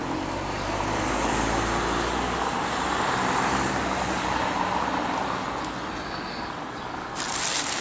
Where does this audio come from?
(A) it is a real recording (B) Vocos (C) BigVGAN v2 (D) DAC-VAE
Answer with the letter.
A